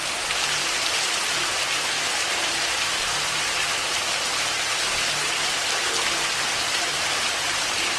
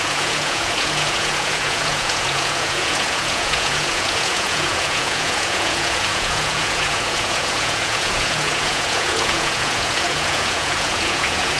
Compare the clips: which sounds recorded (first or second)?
first